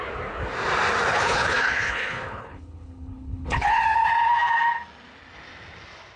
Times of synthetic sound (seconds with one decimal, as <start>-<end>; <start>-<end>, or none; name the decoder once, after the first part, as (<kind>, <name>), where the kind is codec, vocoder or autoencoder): 1.1-3.8 (codec, HILCodec)